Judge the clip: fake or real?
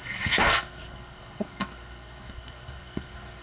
fake